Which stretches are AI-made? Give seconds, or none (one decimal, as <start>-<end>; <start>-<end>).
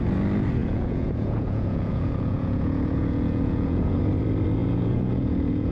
0.6-4.0; 4.6-5.7